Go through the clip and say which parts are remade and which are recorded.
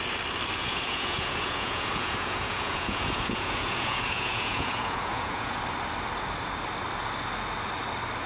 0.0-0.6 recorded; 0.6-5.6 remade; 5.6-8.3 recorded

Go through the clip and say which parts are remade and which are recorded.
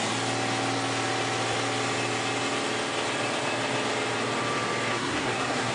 0.0-4.9 recorded; 4.9-5.7 remade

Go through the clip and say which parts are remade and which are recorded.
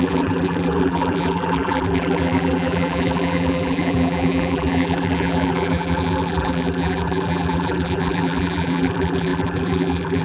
0.0-10.2 remade